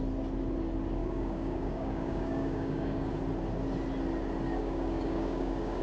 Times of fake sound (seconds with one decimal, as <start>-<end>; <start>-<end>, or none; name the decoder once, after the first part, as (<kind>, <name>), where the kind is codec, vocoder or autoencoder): 1.0-3.1 (codec, DAC); 4.5-5.8